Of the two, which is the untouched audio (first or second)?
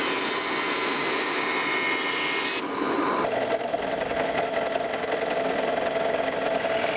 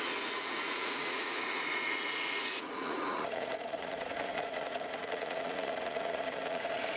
first